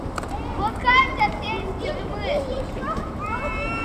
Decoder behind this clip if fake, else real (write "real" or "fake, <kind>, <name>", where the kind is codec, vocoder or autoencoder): fake, vocoder, BigVGAN v2